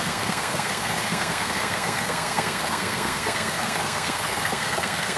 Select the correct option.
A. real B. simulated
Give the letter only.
B